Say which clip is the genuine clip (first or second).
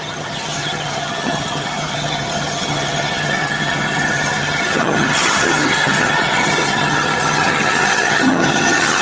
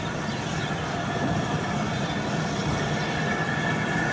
second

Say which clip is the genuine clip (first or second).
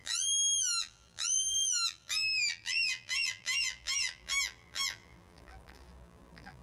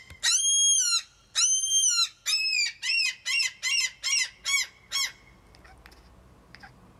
second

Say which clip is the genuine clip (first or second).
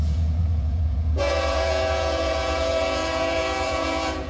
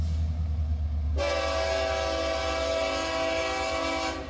second